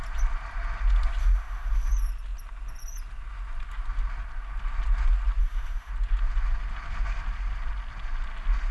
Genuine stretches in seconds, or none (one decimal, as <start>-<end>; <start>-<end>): 0.0-1.2; 1.9-5.4; 5.9-8.7